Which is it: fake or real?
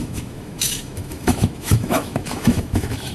fake